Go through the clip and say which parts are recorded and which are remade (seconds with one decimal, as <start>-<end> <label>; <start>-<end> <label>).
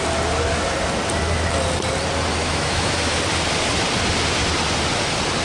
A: 0.0-2.4 recorded; 2.4-3.1 remade; 3.1-5.4 recorded